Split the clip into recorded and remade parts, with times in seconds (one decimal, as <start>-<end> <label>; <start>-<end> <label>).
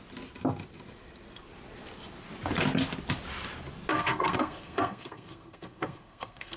0.0-3.9 recorded; 3.9-6.6 remade